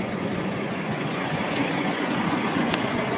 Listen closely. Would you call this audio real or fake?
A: fake